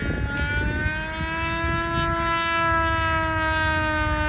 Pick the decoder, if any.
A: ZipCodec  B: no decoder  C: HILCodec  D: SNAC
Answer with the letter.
B